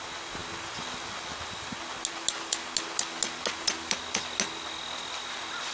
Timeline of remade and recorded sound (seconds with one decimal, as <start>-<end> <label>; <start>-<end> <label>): 0.0-5.7 recorded